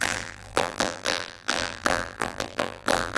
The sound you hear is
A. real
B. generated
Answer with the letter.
B